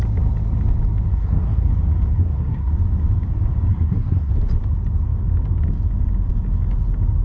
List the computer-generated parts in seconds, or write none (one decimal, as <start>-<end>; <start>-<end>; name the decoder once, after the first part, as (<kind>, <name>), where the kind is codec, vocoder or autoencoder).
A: 1.1-1.7 (codec, SNAC); 2.1-2.7; 3.7-4.3